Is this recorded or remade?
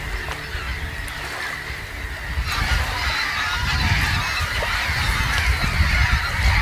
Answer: recorded